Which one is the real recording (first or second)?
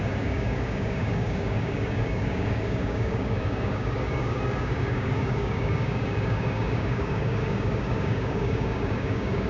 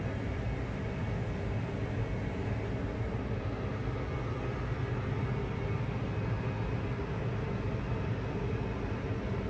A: second